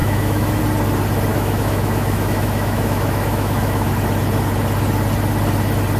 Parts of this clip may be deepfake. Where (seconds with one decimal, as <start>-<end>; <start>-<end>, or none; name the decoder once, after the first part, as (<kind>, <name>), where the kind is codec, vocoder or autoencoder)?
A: 0.0-0.6 (autoencoder, DAC-VAE); 1.3-3.9